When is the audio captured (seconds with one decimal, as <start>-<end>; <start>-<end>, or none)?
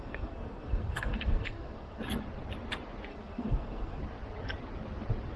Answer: 2.0-3.1; 4.0-5.4